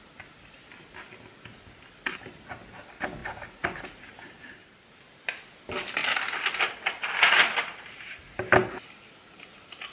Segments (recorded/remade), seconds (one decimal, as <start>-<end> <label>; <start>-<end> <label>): 0.0-4.6 recorded; 4.6-5.3 remade; 5.3-9.9 recorded